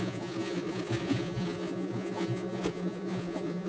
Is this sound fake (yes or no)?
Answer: yes